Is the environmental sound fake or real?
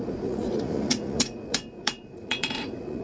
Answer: fake